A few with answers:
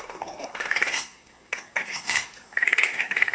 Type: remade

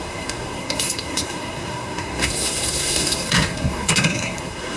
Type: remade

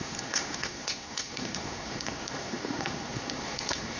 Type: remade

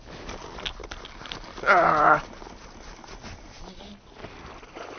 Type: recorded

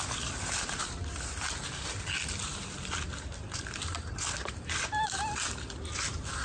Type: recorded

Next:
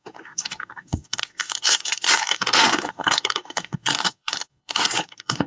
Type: remade